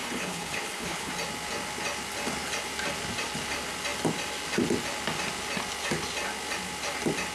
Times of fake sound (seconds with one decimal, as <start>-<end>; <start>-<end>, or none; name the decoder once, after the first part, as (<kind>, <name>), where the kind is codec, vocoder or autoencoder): 0.0-1.1 (codec, HILCodec)